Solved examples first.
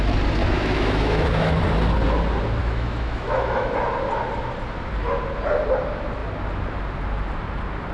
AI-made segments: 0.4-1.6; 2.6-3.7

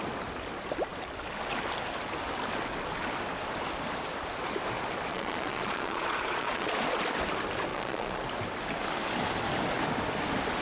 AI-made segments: 5.1-6.7; 7.7-8.2

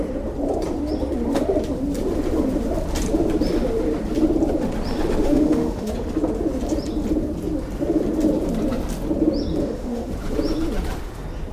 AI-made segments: 5.2-5.9; 9.6-10.1

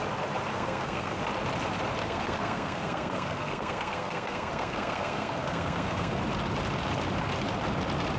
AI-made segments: 0.5-1.2; 2.0-6.2